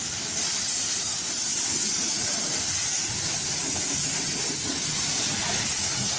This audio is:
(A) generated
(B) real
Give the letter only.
B